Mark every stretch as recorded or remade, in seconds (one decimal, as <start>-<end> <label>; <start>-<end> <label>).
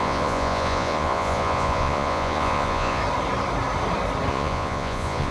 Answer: 0.0-3.0 remade; 3.0-4.3 recorded; 4.3-5.3 remade